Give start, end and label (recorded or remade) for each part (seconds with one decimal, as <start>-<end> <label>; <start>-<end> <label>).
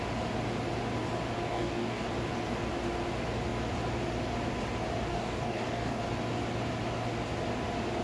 0.0-1.5 recorded; 1.5-2.1 remade; 2.1-5.1 recorded; 5.1-6.0 remade; 6.0-8.0 recorded